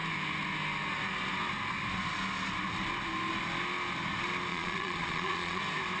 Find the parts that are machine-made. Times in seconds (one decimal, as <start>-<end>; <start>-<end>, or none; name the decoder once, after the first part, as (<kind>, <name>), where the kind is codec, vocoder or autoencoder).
4.5-5.6 (vocoder, Vocos)